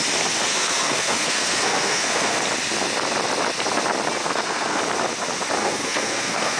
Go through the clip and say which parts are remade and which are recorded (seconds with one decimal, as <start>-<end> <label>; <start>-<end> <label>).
0.0-0.5 recorded; 0.5-2.4 remade; 2.4-4.2 recorded; 4.2-4.8 remade; 4.8-5.6 recorded; 5.6-6.6 remade